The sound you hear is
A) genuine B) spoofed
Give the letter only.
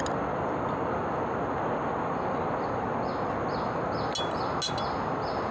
A